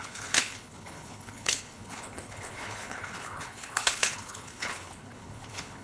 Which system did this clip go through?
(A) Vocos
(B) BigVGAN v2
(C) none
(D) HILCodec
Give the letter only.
D